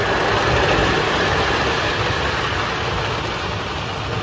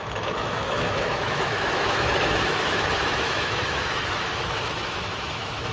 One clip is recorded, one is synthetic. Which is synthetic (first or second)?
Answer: second